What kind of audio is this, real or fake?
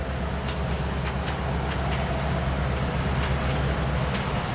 real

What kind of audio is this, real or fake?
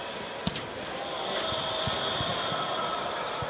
real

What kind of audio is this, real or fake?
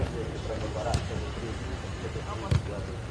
real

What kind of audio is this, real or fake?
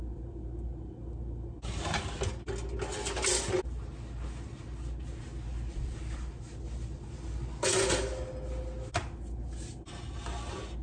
real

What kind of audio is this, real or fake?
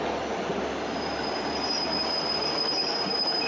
real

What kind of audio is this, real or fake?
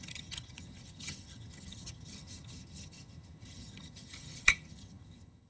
fake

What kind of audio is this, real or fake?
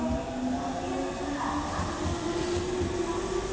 real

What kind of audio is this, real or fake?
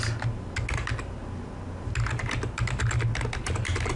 real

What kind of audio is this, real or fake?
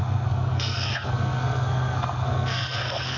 fake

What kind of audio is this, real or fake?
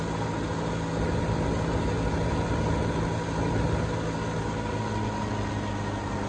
real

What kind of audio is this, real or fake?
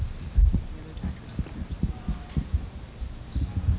real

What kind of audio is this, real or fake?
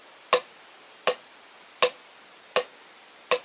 real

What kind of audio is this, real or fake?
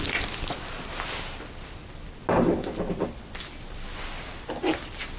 real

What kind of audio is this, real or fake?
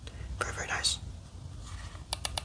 real